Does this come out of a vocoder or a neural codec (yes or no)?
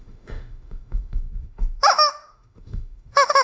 yes